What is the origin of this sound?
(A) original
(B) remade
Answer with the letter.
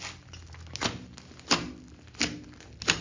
A